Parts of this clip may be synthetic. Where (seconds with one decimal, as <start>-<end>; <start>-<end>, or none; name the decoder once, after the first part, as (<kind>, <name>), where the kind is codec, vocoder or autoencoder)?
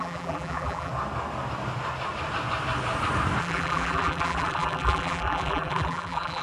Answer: 0.0-0.9 (vocoder, BigVGAN v2); 3.4-6.4